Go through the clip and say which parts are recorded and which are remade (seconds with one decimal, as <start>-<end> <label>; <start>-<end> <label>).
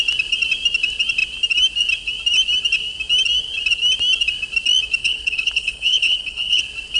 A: 0.0-5.0 recorded; 5.0-6.6 remade; 6.6-7.0 recorded